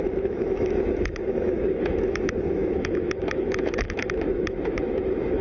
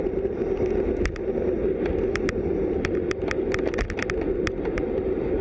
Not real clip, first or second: first